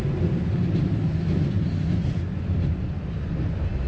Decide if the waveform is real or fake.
real